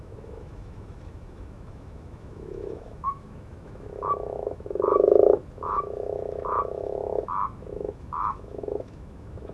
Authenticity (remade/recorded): remade